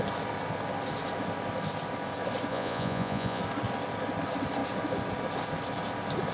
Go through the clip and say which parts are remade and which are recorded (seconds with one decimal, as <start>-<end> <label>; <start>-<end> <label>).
0.0-2.5 recorded; 2.5-3.4 remade; 3.4-6.3 recorded